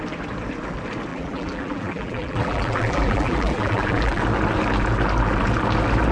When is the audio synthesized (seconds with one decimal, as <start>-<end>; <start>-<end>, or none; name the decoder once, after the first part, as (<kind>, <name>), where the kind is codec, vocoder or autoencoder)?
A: 1.1-4.2 (vocoder, BigVGAN v2)